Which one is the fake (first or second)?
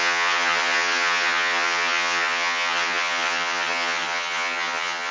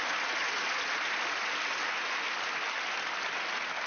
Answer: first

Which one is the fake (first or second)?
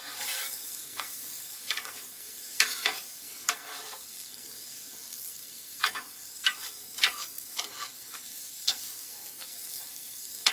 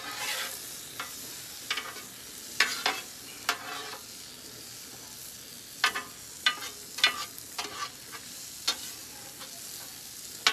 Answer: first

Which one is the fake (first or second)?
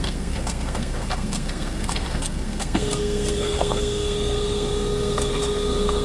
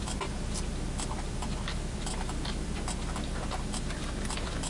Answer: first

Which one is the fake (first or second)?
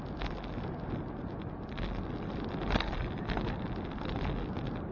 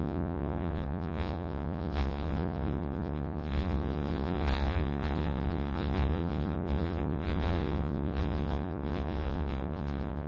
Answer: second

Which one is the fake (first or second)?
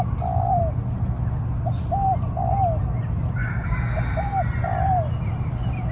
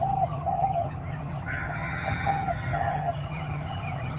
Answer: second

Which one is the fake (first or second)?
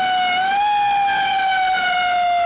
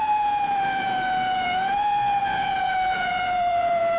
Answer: second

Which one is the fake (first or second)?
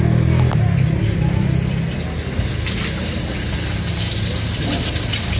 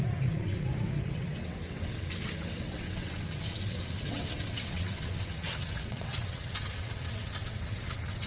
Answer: second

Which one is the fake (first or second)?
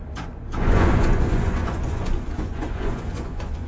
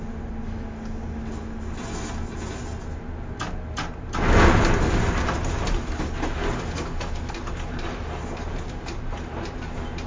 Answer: first